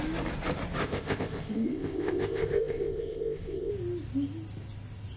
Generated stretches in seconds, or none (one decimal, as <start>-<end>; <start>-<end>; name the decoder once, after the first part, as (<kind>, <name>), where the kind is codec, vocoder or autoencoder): 0.8-3.7 (codec, ZipCodec)